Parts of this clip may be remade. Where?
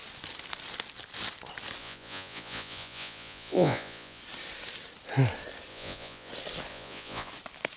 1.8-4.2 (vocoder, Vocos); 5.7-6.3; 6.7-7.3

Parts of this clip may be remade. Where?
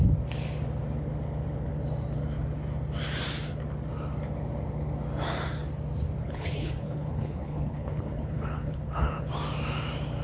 6.2-9.3 (codec, HILCodec)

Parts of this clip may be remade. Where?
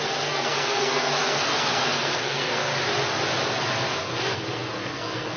0.0-2.7 (codec, SNAC); 4.0-5.4